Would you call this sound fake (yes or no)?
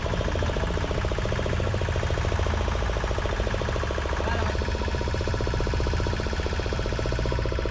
no